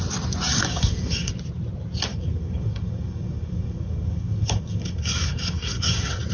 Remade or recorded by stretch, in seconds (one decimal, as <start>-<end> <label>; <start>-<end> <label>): 0.0-0.5 recorded; 0.5-1.3 remade; 1.3-2.1 recorded; 2.1-6.3 remade